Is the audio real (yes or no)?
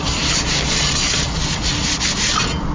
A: yes